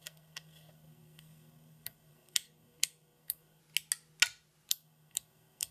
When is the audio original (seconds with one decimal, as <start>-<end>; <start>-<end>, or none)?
3.6-4.7